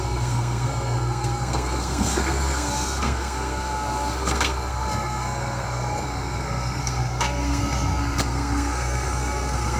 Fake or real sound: fake